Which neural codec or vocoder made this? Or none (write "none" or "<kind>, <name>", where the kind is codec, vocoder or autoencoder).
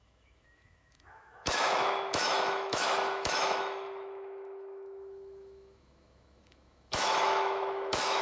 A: autoencoder, DAC-VAE